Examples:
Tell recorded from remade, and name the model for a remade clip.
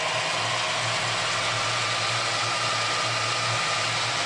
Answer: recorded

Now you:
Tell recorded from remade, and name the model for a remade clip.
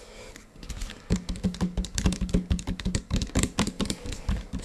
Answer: remade, codec, DAC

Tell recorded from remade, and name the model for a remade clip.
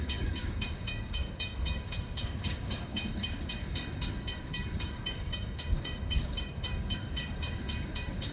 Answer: remade, codec, DAC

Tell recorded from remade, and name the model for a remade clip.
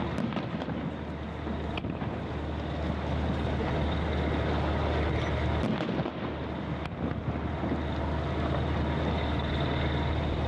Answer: recorded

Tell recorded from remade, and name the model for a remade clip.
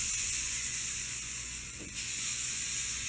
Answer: remade, vocoder, Vocos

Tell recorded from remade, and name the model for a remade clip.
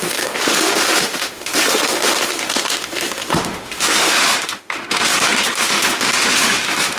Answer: remade, autoencoder, DAC-VAE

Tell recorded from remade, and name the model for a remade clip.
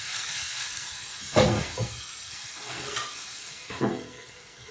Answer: remade, codec, SNAC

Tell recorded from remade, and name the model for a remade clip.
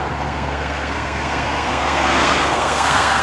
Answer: remade, codec, SNAC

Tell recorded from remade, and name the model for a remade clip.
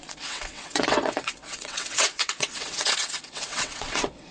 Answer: remade, vocoder, WaveNeXt